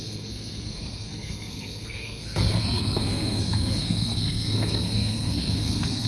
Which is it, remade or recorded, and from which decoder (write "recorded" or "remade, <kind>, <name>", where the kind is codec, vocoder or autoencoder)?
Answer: remade, codec, SNAC